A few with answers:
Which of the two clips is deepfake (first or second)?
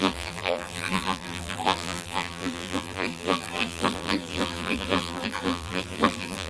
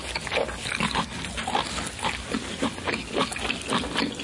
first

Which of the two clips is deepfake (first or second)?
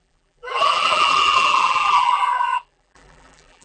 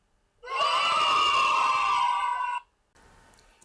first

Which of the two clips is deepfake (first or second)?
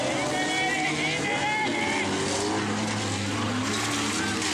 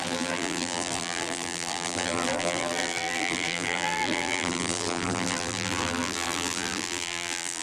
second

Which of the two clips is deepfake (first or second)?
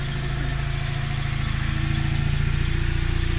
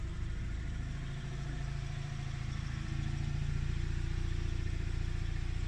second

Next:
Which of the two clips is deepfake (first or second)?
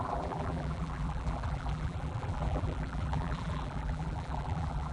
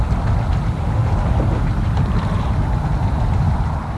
first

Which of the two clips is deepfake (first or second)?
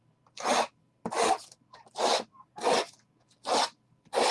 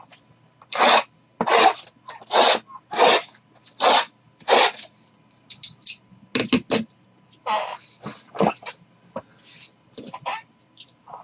first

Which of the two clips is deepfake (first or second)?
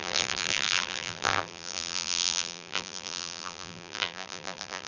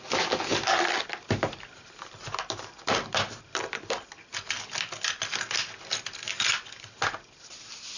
first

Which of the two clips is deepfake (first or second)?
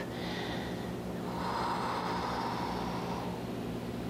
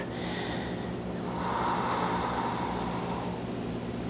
second